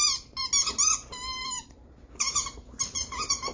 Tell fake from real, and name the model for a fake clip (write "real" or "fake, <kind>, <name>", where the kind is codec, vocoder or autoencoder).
real